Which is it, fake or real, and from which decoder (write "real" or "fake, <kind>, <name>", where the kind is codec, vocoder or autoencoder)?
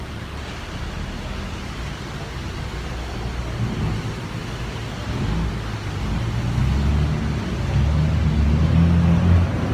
real